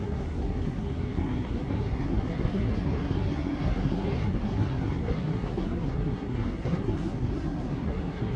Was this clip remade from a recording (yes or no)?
yes